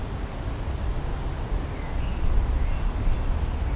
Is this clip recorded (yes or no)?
yes